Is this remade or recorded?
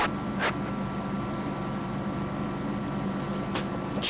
recorded